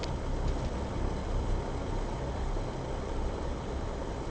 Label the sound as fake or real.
real